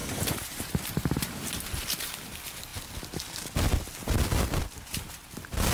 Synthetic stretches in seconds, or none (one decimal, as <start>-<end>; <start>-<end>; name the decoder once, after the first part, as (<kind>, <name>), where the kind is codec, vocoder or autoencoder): 0.0-1.5 (vocoder, BigVGAN v2)